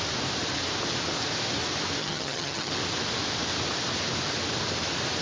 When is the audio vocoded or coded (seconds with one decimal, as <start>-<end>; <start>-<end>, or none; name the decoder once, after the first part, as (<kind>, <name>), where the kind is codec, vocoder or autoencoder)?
2.0-2.7 (vocoder, HiFi-GAN)